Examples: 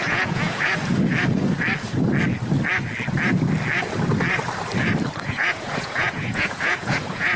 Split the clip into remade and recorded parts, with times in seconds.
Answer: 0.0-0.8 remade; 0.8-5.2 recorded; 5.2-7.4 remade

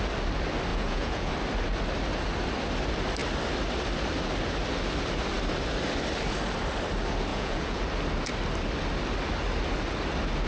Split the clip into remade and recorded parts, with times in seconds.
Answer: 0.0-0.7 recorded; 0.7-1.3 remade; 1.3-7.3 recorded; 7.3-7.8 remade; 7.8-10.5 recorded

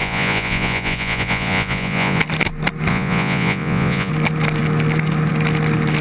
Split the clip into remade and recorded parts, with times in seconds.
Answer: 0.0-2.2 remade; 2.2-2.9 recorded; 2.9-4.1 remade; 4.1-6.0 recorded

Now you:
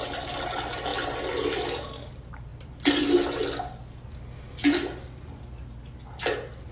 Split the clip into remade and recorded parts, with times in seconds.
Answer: 0.0-6.7 recorded